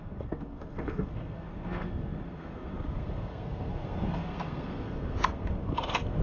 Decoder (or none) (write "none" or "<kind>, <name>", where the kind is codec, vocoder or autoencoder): codec, SNAC